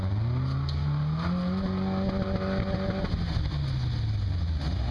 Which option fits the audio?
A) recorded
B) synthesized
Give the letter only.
A